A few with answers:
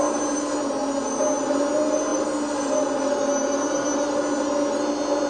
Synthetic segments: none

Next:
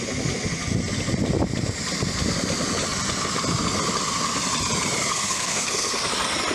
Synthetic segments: 5.1-6.0 (codec, SNAC)

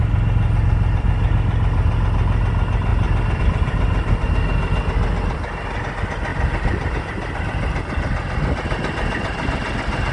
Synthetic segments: none

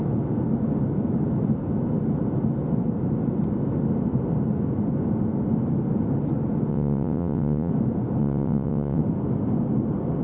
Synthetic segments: 6.7-7.7 (vocoder, WaveNeXt); 8.2-9.0

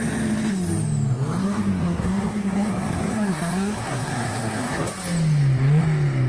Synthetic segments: 1.4-4.9 (codec, SNAC)

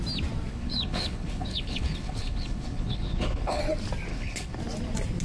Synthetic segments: 0.5-3.6 (codec, HILCodec); 4.1-4.6

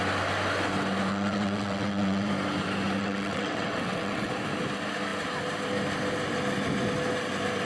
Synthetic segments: 1.1-2.3 (vocoder, WaveNeXt); 3.0-4.3

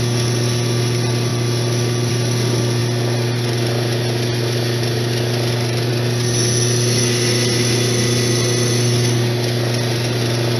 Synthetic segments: 1.3-2.1 (vocoder, BigVGAN v2)